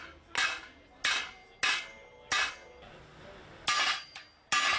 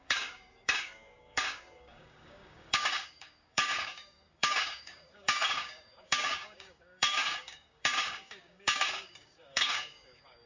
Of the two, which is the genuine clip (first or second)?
first